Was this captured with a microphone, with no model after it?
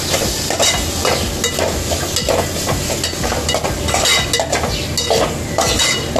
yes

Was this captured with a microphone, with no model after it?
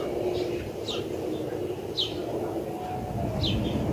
yes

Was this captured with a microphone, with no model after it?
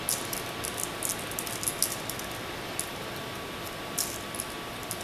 yes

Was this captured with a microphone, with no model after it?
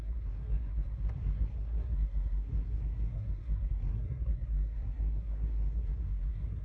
no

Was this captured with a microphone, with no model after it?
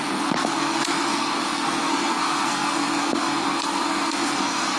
no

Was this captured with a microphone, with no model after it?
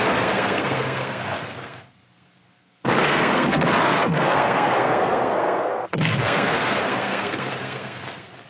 no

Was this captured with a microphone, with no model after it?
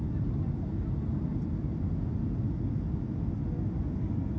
yes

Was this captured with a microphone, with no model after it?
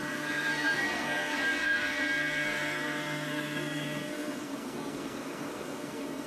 no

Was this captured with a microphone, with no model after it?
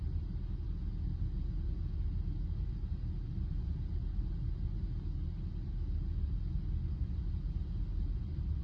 yes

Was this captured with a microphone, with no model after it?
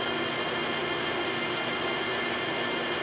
yes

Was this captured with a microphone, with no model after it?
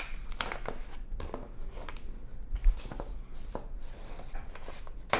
yes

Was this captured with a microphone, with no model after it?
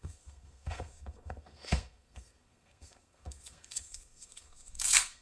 no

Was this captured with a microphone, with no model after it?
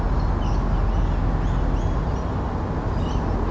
yes